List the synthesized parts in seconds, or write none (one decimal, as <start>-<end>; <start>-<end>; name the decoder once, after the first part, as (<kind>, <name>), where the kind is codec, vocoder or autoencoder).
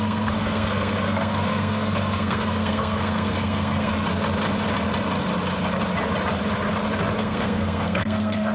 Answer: 0.0-3.9 (codec, SNAC); 7.2-8.5